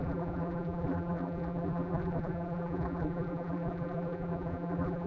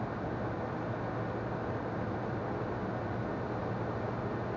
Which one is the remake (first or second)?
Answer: first